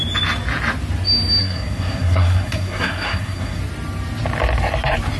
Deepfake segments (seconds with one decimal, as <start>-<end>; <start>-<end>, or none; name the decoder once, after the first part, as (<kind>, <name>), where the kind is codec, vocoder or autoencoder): 1.4-3.6 (codec, SNAC)